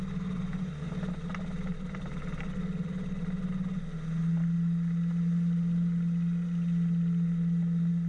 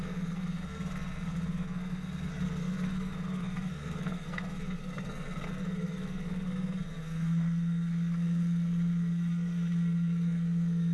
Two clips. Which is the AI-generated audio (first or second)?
second